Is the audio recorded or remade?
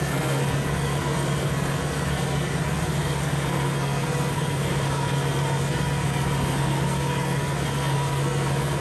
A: remade